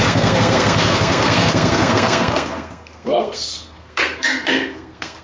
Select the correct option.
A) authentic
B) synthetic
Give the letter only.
B